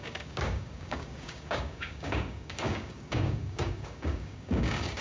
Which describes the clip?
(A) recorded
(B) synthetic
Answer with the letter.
B